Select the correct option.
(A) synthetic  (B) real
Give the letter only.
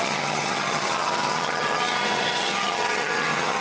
A